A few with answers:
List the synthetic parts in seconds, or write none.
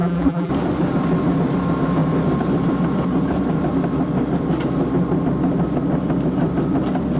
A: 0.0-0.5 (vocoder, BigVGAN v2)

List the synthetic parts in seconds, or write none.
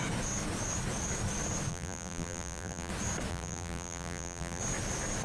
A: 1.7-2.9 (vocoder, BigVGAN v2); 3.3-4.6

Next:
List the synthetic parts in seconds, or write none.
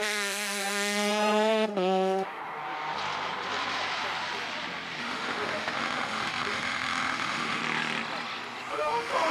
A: 0.0-2.4 (autoencoder, DAC-VAE); 5.0-7.6; 8.7-9.3